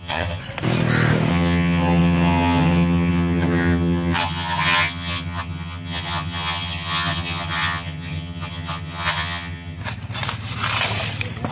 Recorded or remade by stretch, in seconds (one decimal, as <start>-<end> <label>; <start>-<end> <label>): 0.0-0.4 remade; 0.4-1.3 recorded; 1.3-9.8 remade; 9.8-11.5 recorded